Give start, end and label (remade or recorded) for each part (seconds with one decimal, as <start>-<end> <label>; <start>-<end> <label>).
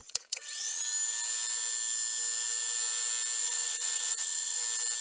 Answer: 0.0-0.8 remade; 0.8-3.4 recorded; 3.4-4.6 remade; 4.6-5.0 recorded